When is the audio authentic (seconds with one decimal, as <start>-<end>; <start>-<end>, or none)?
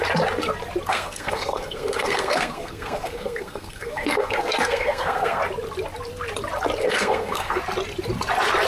0.0-0.9; 5.4-6.8; 7.6-8.7